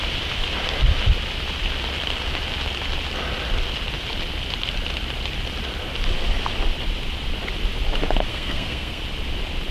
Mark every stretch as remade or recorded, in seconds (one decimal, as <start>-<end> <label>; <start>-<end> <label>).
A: 0.0-8.3 recorded; 8.3-9.0 remade; 9.0-9.7 recorded